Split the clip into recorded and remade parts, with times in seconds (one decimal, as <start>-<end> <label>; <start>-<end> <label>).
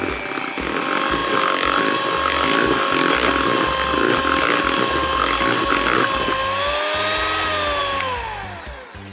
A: 0.0-9.1 recorded